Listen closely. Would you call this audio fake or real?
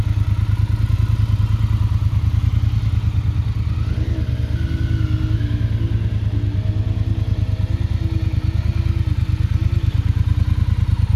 real